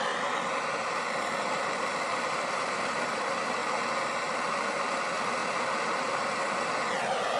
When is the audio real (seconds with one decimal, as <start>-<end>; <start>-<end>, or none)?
3.6-4.3

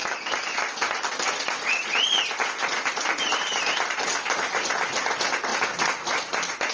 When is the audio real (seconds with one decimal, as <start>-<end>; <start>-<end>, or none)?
4.0-5.5; 6.3-6.7

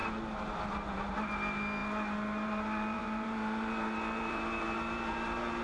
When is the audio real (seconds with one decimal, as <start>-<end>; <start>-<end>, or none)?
0.0-1.8

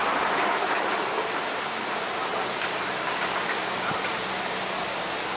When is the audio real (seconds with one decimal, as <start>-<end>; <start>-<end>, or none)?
0.0-5.4

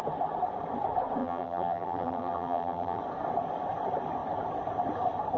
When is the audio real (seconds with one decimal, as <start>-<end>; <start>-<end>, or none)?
0.0-1.2; 3.0-5.4

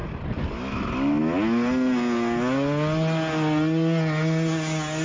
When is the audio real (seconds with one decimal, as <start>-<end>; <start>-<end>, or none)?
0.0-5.0

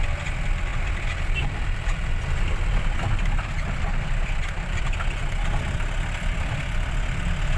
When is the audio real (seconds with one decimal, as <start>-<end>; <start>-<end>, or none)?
0.0-0.7; 5.0-7.6